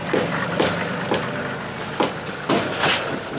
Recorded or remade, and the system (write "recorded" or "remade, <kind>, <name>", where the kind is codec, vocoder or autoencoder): recorded